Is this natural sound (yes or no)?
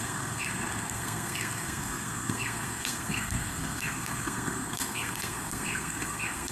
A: no